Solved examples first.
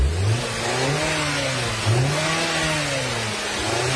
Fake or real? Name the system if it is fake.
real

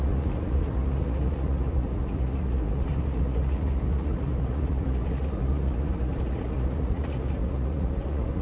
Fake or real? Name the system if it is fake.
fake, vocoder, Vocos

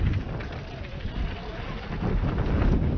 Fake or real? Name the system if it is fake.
real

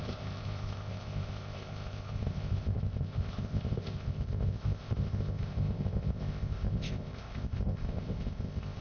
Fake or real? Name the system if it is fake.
fake, codec, ZipCodec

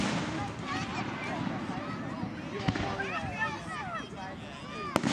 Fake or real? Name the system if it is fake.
real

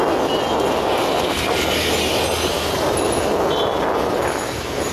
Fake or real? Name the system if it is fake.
real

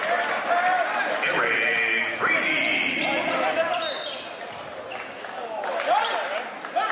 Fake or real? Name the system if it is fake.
real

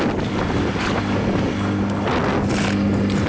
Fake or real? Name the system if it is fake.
real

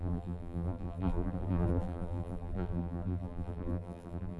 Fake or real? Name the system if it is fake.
fake, vocoder, BigVGAN v2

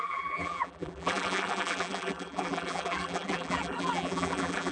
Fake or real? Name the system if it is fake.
fake, vocoder, BigVGAN v2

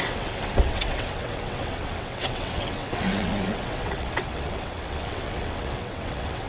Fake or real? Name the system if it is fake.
fake, vocoder, WaveNeXt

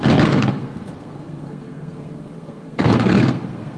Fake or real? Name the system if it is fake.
fake, codec, SNAC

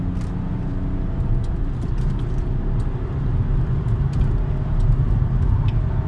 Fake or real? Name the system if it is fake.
real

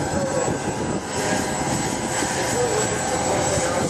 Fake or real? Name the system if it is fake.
real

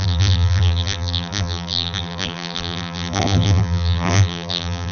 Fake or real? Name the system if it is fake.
fake, vocoder, BigVGAN v2